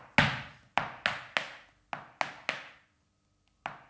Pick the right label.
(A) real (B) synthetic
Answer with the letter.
A